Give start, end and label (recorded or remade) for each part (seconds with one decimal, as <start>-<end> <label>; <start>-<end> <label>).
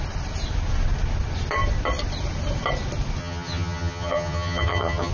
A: 0.0-3.2 recorded; 3.2-5.1 remade